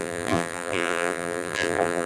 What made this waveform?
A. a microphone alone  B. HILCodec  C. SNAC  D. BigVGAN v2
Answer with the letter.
D